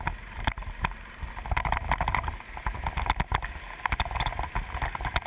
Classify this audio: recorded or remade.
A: recorded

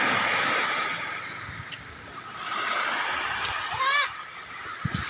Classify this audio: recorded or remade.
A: recorded